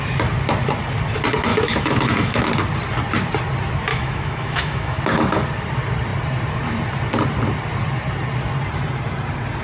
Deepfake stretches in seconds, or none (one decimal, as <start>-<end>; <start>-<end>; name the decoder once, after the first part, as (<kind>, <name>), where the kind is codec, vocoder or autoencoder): 1.5-2.5 (autoencoder, DAC-VAE); 3.9-5.0